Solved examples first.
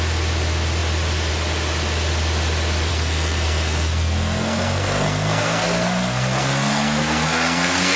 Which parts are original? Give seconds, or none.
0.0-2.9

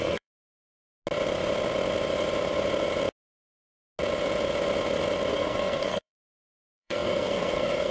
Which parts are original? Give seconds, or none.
0.6-5.3

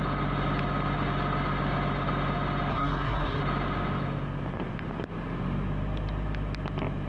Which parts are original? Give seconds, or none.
0.0-2.7; 3.4-7.1

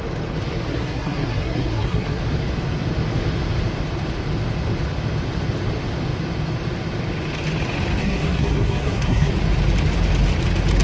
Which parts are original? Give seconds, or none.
0.0-0.7; 2.2-8.0; 9.3-10.8

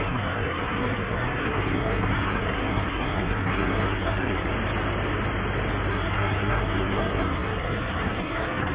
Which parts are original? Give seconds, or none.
4.5-5.9

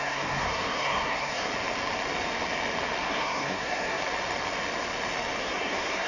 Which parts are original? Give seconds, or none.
1.5-3.0; 4.0-5.4

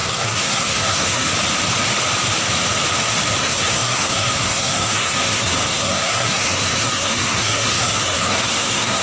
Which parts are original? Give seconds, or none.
1.3-3.4